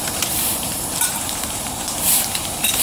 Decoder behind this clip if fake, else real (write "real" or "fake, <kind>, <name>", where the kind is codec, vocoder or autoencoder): fake, vocoder, BigVGAN v2